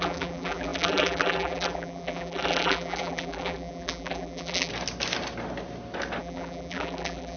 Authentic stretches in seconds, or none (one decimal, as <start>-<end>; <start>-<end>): 4.7-6.2